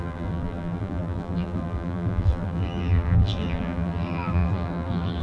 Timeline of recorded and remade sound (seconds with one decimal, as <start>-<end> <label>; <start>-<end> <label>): 0.0-5.2 remade